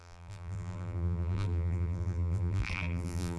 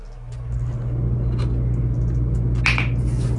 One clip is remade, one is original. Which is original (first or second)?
second